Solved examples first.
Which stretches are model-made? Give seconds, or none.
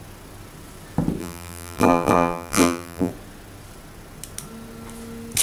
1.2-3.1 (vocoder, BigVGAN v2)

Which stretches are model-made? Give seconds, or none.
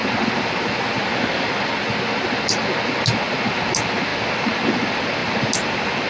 none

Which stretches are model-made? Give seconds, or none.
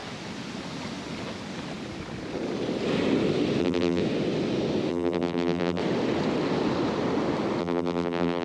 3.6-4.0 (vocoder, BigVGAN v2); 4.9-5.8; 7.6-8.4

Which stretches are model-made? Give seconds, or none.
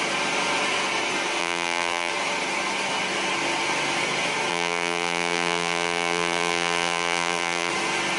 1.4-2.1 (vocoder, BigVGAN v2); 4.5-7.7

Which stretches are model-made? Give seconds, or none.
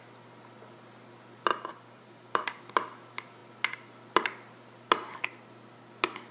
1.5-2.6 (vocoder, BigVGAN v2)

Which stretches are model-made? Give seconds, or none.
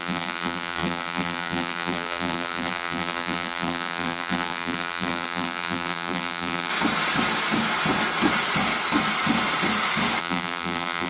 0.0-6.7 (vocoder, BigVGAN v2); 10.2-11.1